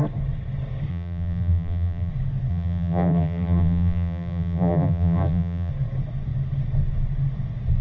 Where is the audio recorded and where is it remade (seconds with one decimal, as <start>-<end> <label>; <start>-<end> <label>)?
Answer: 0.0-0.9 recorded; 0.9-2.1 remade; 2.1-2.5 recorded; 2.5-5.7 remade; 5.7-7.8 recorded